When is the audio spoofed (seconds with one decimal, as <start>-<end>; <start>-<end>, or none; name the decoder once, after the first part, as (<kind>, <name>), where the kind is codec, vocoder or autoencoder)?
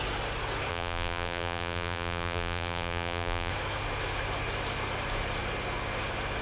0.7-3.5 (vocoder, BigVGAN v2)